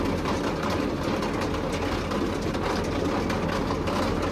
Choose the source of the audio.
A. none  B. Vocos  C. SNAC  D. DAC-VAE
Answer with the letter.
A